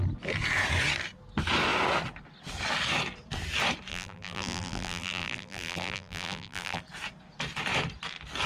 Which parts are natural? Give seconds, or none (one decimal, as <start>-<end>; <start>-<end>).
0.0-3.9; 6.8-8.5